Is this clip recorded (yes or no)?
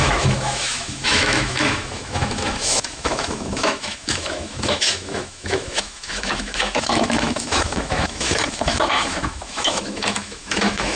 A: no